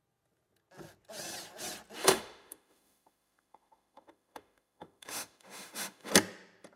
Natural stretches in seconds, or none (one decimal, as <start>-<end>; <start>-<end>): 0.0-2.0; 6.1-6.8